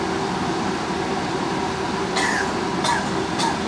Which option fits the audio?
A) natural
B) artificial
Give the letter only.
B